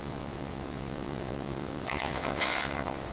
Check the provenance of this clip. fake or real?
fake